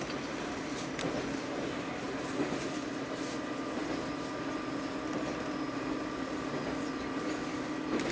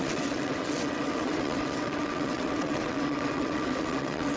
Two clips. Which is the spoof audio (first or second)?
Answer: second